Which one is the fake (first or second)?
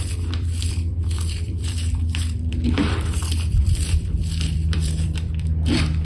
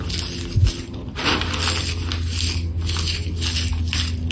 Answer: first